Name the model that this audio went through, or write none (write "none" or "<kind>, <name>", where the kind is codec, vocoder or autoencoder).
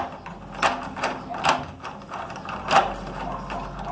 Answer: none